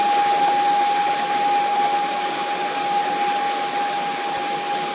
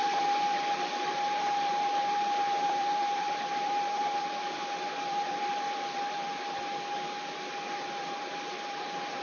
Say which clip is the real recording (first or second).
first